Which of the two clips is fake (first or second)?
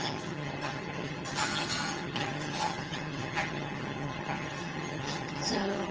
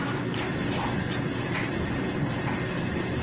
first